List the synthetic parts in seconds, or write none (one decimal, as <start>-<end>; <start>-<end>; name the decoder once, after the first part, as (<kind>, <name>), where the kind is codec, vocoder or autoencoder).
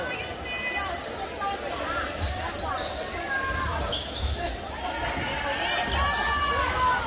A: 3.7-4.5 (autoencoder, DAC-VAE)